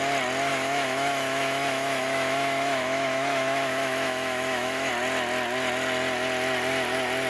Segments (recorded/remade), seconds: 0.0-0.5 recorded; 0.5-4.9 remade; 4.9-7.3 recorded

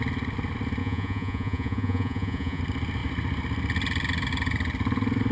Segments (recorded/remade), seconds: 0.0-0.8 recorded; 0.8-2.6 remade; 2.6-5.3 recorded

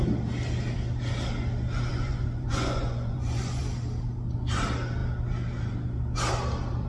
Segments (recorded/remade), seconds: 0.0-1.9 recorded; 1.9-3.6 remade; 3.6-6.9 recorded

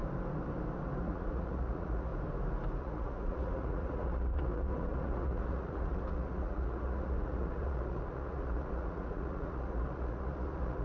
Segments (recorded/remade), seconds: 0.0-1.0 recorded; 1.0-2.1 remade; 2.1-2.8 recorded; 2.8-10.8 remade

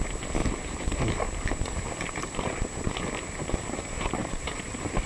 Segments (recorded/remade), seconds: 0.0-4.2 recorded; 4.2-5.1 remade